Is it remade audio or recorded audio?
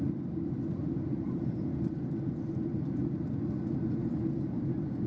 recorded